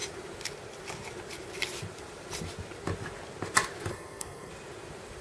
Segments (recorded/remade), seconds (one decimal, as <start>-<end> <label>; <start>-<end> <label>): 0.0-3.9 recorded; 3.9-4.5 remade; 4.5-5.2 recorded